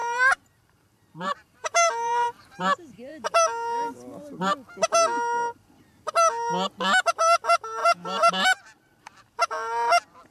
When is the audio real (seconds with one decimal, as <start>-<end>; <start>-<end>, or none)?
2.5-7.8; 9.2-10.3